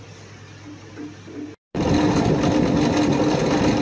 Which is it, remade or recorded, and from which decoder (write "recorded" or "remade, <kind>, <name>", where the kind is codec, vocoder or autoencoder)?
recorded